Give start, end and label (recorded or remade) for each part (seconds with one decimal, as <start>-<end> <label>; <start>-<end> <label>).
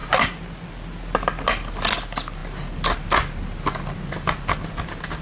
0.0-5.2 recorded